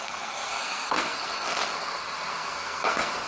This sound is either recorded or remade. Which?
remade